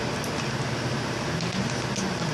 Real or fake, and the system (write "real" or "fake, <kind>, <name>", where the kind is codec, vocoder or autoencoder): real